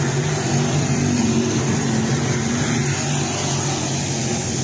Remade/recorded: recorded